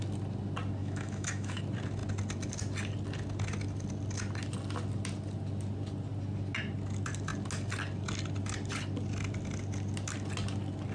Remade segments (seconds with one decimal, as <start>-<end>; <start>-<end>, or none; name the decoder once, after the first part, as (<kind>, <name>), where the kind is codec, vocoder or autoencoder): 0.8-1.6 (autoencoder, DAC-VAE)